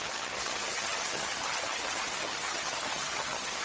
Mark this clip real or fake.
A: fake